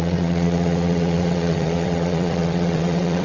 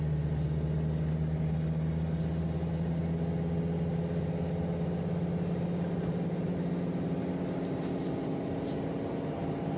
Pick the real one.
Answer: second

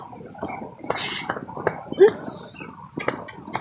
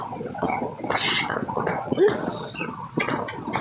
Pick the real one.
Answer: first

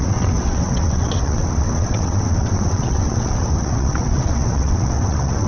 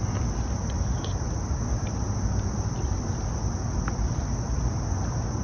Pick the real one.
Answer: second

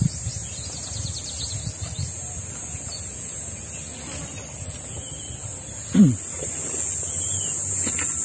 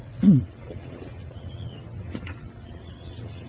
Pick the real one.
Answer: first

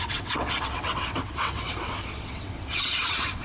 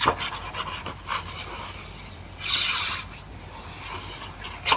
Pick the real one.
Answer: second